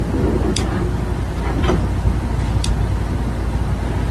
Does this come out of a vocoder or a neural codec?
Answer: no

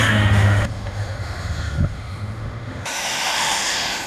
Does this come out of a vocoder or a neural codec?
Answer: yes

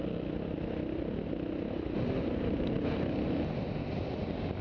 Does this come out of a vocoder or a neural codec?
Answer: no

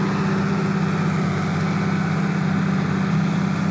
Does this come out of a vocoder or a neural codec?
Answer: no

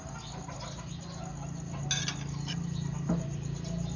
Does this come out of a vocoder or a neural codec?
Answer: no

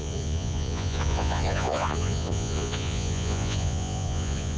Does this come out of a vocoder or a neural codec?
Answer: yes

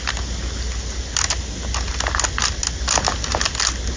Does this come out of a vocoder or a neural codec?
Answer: no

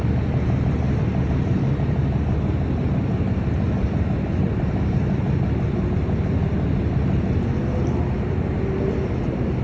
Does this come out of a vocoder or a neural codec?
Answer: no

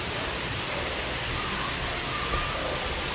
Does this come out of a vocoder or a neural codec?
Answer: no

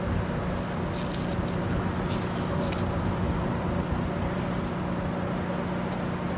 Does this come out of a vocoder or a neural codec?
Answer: no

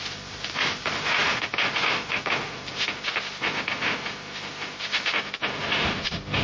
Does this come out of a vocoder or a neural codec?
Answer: no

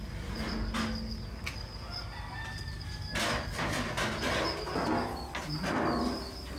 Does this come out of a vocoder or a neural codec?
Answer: no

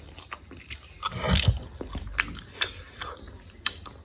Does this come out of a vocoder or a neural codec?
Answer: no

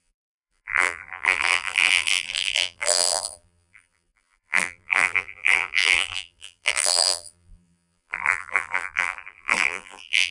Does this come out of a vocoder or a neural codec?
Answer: yes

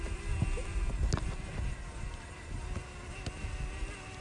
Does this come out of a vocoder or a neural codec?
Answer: no